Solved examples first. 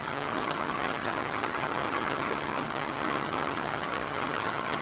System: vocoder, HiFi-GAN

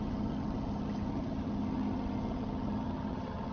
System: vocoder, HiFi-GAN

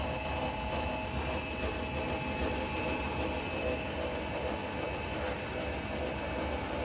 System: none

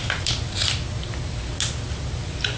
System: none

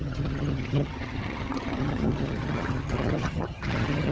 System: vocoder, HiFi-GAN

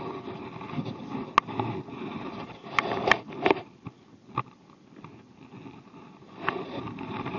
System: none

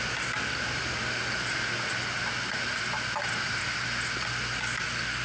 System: none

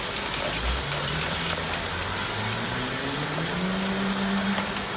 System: none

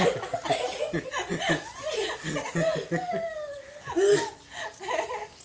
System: none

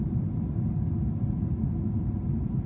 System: none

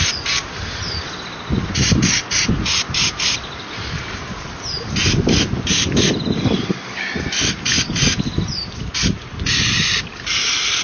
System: none